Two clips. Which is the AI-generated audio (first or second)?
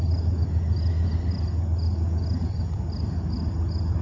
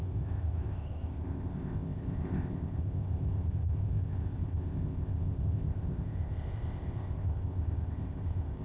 second